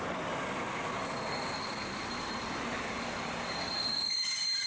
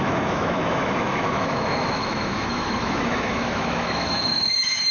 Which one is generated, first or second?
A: second